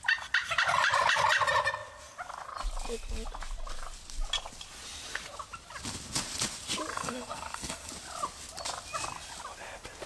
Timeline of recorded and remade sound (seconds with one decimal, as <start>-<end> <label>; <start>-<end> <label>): 0.0-6.9 recorded; 6.9-7.9 remade; 7.9-10.1 recorded

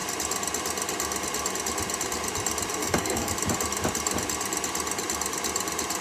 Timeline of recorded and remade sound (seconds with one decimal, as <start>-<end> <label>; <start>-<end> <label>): 0.0-2.8 recorded; 2.8-3.3 remade; 3.3-6.0 recorded

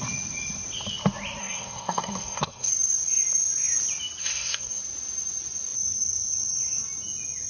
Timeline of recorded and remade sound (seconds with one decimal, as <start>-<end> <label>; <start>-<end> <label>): 0.0-1.4 recorded; 1.4-2.7 remade; 2.7-4.2 recorded; 4.2-4.8 remade; 4.8-7.5 recorded

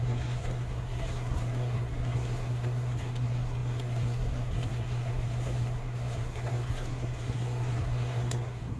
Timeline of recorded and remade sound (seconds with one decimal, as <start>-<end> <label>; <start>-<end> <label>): 0.0-8.8 remade

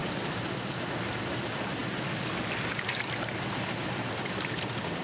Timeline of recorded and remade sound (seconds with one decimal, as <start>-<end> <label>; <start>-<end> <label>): 0.0-5.0 recorded